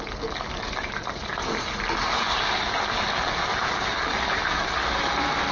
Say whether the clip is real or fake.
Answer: real